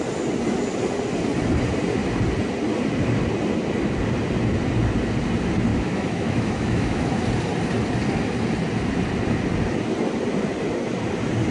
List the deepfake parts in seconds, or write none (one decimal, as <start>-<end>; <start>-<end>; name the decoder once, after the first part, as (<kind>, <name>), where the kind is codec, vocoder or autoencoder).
5.7-7.2 (autoencoder, DAC-VAE)